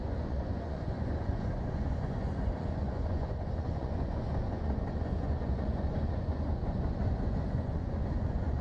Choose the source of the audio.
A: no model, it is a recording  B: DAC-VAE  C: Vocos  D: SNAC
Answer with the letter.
C